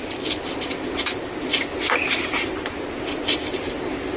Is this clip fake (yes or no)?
no